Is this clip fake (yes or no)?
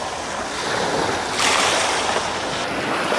no